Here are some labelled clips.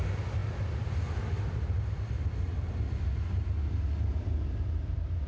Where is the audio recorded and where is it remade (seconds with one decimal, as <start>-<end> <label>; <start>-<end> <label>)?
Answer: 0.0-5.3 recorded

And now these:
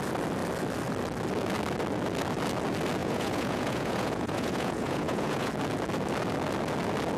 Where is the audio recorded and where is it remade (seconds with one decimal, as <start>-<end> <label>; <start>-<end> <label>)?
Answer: 0.0-3.0 recorded; 3.0-5.5 remade; 5.5-7.2 recorded

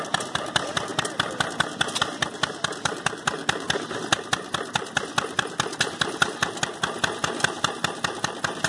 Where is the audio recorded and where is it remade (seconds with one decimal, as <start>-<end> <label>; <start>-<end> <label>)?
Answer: 0.0-8.7 recorded